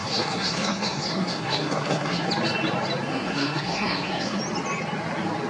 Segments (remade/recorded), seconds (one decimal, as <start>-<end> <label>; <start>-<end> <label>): 0.0-2.3 remade; 2.3-3.1 recorded; 3.1-4.4 remade; 4.4-5.5 recorded